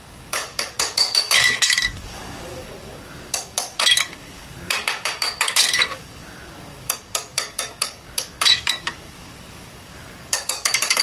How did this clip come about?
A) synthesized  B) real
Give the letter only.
A